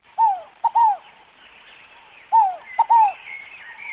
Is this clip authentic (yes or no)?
no